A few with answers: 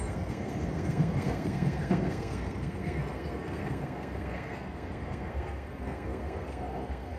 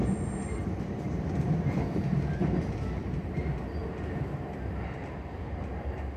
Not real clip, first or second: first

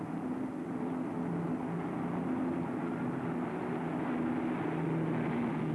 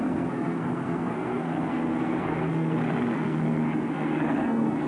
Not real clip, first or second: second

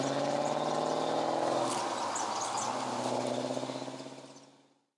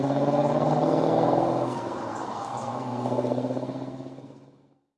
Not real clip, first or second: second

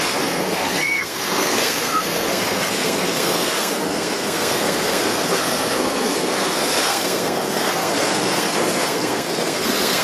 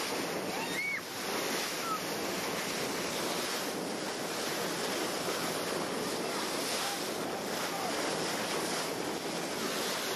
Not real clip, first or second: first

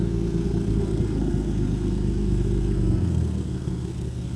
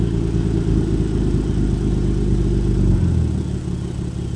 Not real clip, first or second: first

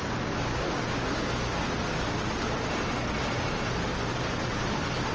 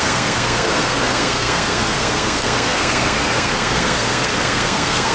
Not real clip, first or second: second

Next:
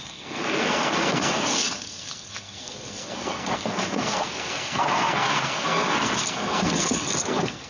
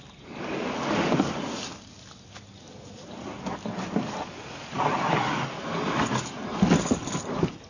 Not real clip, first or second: first